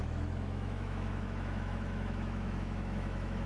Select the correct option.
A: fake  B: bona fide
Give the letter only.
A